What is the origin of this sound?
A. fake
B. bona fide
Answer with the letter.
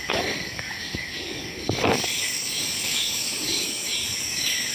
A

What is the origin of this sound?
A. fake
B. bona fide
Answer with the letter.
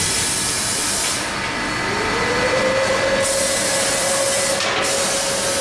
B